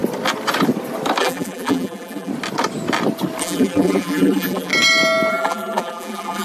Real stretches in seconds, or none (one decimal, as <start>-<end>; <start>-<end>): 0.0-1.2; 2.3-3.4; 4.7-5.3